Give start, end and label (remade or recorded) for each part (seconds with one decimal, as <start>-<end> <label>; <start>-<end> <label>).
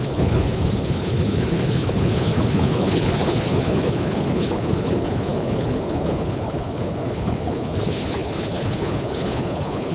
0.0-9.9 remade